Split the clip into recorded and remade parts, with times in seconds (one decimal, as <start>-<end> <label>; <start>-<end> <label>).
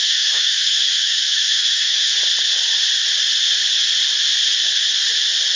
0.0-2.1 remade; 2.1-5.6 recorded